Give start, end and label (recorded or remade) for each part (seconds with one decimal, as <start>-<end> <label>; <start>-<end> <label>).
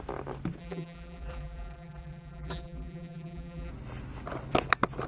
0.0-0.6 recorded; 0.6-3.7 remade; 3.7-5.1 recorded